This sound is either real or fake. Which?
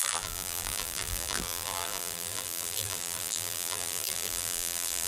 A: fake